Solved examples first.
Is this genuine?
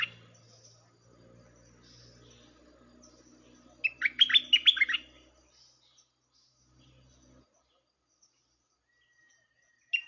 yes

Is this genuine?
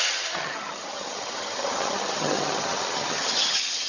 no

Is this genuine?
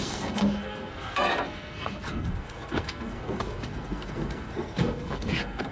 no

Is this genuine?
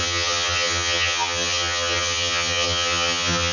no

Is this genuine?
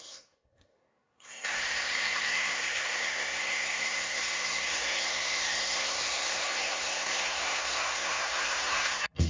no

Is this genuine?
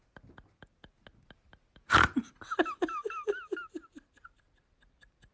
yes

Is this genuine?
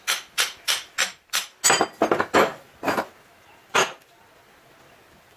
yes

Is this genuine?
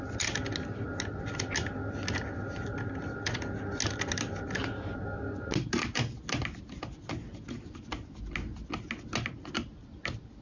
yes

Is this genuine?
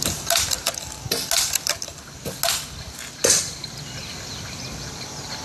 yes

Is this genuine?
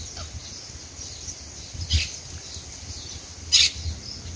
yes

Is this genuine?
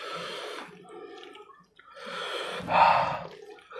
yes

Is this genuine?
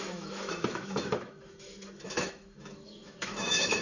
no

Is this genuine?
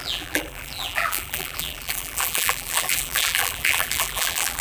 no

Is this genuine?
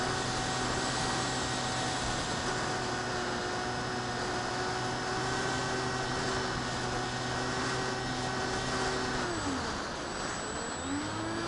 yes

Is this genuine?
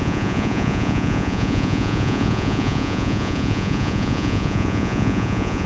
no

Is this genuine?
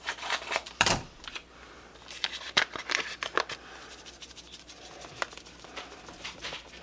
no